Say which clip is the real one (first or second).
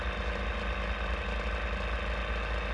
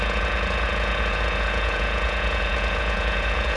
first